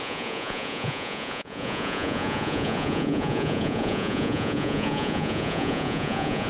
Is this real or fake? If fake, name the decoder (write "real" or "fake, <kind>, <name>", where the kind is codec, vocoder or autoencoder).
fake, vocoder, Vocos